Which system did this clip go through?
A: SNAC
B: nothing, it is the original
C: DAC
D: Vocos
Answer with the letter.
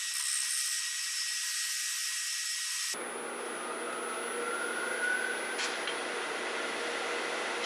B